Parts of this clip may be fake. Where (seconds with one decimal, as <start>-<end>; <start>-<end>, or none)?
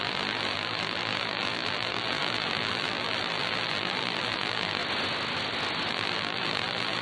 0.0-4.8; 5.9-7.0